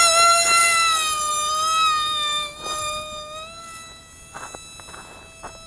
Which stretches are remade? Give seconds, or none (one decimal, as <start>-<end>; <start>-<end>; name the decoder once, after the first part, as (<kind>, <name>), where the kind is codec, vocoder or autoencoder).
none